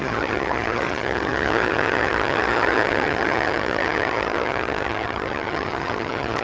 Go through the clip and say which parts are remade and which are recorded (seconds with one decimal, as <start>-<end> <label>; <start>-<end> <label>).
0.0-6.4 remade